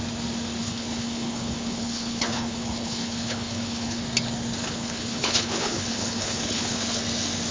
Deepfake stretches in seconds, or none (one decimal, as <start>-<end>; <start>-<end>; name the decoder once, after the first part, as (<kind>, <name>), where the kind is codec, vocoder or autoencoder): 0.6-4.0 (codec, HILCodec); 4.6-7.0